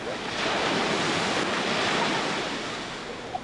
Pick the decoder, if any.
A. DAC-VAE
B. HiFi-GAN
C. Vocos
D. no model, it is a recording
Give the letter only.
D